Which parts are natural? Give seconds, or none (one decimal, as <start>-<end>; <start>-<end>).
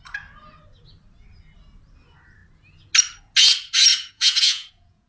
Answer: 0.0-3.9